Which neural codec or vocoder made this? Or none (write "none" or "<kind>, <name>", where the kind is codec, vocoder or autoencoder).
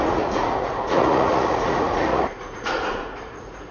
vocoder, Vocos